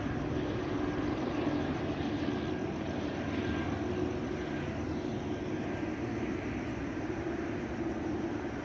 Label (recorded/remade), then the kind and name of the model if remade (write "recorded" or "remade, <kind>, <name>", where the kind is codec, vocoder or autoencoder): recorded